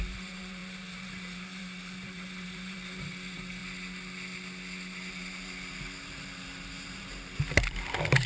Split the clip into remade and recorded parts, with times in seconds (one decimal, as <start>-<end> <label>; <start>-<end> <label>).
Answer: 0.0-3.6 remade; 3.6-5.1 recorded; 5.1-8.3 remade